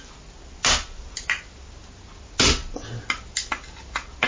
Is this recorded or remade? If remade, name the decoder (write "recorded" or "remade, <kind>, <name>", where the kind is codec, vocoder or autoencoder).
recorded